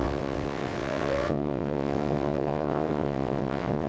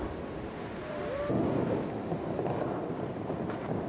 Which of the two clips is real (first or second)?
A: second